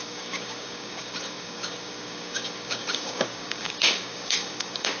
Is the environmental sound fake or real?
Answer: fake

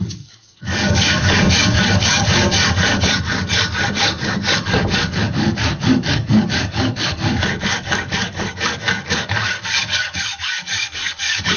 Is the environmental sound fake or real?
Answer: fake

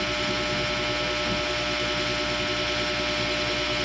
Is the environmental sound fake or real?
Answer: real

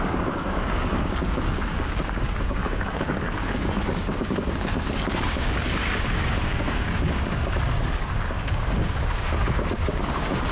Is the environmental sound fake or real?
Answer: fake